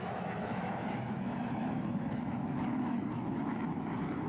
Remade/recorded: remade